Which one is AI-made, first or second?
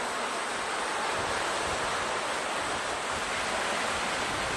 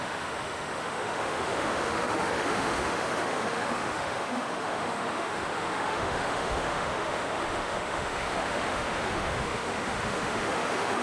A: second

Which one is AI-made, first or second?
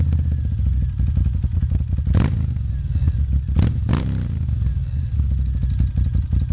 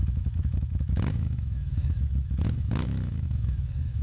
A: second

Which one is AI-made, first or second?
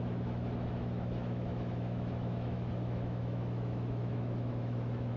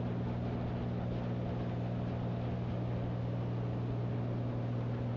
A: first